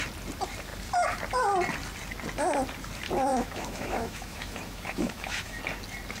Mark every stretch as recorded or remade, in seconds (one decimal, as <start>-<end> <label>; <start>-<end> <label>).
0.0-3.3 recorded; 3.3-5.6 remade; 5.6-6.2 recorded